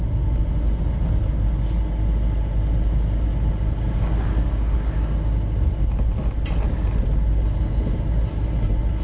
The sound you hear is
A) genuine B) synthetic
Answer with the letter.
A